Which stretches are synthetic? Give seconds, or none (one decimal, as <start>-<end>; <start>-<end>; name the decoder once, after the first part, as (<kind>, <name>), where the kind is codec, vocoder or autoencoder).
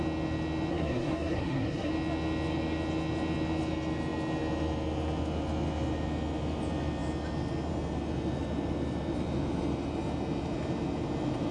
0.7-1.9 (codec, SNAC)